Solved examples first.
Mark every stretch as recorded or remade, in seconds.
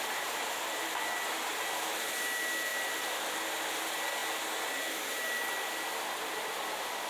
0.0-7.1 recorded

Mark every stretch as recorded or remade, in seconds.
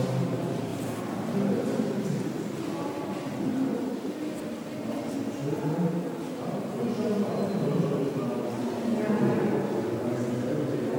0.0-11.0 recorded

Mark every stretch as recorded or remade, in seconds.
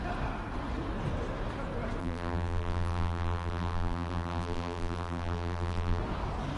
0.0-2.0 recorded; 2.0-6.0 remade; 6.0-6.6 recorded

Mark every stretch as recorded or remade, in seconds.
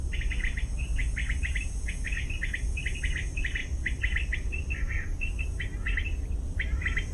0.0-3.6 recorded; 3.6-5.6 remade; 5.6-7.1 recorded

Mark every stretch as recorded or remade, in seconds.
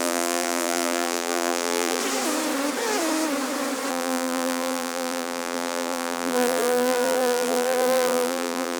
0.0-2.0 remade; 2.0-3.9 recorded; 3.9-8.8 remade